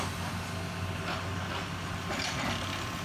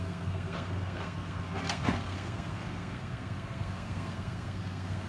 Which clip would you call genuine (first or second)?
first